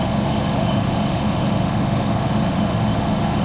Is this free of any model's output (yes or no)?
no